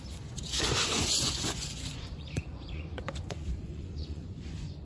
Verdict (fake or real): fake